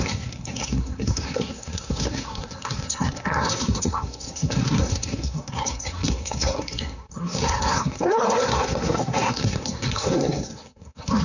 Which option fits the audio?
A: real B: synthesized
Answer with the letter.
B